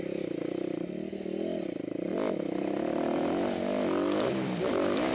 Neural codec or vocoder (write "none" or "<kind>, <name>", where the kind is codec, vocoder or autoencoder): none